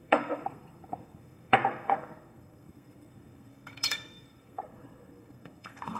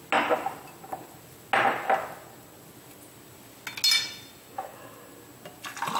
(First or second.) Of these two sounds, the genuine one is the second